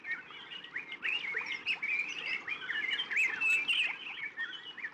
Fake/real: real